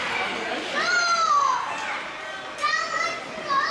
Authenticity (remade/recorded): recorded